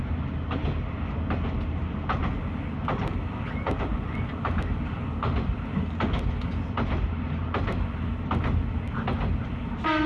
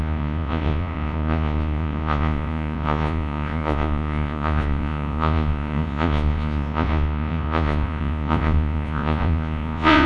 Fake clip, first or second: second